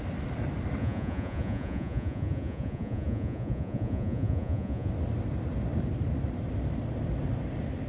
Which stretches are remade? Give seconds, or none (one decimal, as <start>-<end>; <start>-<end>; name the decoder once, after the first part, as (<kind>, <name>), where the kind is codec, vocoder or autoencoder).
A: 0.8-4.9 (vocoder, Vocos)